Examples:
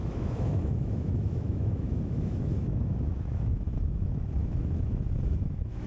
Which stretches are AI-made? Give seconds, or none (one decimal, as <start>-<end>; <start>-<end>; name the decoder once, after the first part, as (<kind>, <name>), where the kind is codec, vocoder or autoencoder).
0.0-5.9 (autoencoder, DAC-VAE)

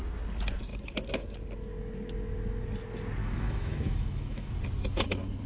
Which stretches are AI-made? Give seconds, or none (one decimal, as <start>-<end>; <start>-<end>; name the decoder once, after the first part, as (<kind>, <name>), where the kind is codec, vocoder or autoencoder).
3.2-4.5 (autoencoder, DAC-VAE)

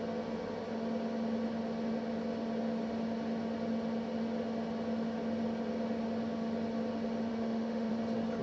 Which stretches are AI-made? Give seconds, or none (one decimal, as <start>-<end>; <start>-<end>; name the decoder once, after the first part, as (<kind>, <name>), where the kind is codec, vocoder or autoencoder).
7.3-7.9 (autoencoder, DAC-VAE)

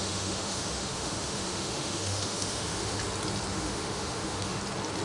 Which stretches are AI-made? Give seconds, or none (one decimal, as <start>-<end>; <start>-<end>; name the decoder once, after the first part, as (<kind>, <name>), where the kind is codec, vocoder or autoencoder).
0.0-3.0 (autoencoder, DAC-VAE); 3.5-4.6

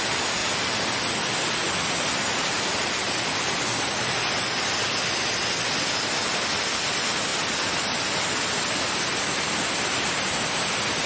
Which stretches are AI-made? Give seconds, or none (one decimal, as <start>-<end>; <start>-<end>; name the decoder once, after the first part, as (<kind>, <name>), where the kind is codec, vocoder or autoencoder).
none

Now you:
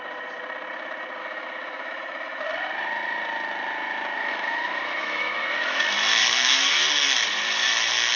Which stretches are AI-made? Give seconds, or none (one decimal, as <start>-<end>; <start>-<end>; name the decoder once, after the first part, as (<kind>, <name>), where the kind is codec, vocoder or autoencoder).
1.2-2.4 (autoencoder, DAC-VAE); 4.2-5.8; 6.2-6.8

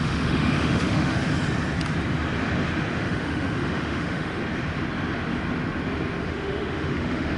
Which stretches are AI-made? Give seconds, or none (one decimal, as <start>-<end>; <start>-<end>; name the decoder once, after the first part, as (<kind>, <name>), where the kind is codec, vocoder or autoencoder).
0.0-1.1 (autoencoder, DAC-VAE); 2.9-4.4; 6.2-7.4